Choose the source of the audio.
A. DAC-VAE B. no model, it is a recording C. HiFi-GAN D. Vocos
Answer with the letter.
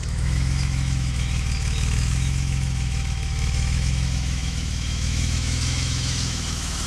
A